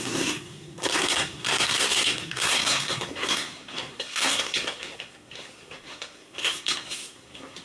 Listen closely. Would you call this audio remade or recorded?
remade